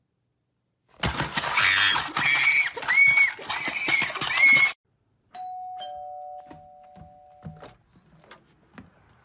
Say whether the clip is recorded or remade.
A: recorded